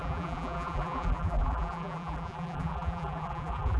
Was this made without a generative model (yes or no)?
no